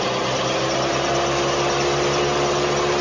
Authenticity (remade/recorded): recorded